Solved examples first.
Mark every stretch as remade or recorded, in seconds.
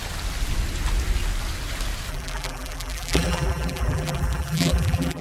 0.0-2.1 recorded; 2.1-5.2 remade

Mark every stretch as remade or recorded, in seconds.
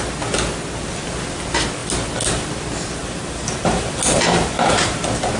0.0-3.0 recorded; 3.0-5.0 remade; 5.0-5.4 recorded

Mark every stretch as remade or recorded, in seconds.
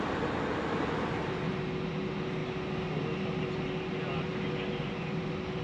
0.0-5.6 recorded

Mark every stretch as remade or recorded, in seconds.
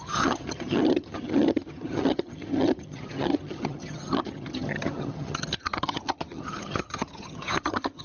0.0-8.0 remade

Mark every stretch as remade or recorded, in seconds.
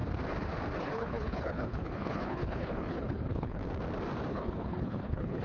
0.0-0.8 recorded; 0.8-3.6 remade; 3.6-4.3 recorded; 4.3-5.4 remade